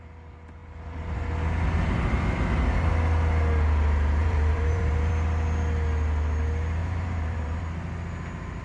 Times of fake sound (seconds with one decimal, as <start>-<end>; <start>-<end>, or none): 4.2-5.1; 6.8-7.6